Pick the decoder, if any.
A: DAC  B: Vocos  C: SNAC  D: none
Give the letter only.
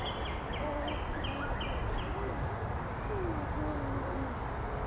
D